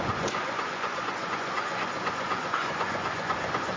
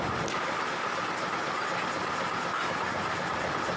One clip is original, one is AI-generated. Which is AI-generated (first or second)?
first